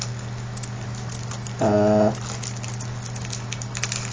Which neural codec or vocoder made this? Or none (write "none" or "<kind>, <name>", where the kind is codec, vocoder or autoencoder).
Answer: none